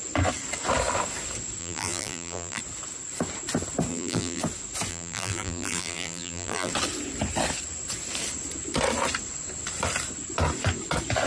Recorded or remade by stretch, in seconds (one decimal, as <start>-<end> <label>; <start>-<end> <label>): 0.0-1.6 recorded; 1.6-2.6 remade; 2.6-3.9 recorded; 3.9-4.4 remade; 4.4-4.9 recorded; 4.9-6.7 remade; 6.7-11.3 recorded